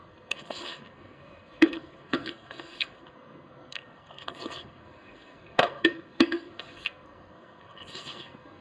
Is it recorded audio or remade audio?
remade